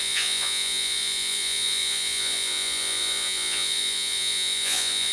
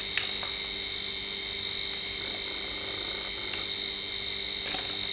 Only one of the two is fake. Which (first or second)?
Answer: first